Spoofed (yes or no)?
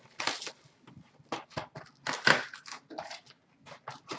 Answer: no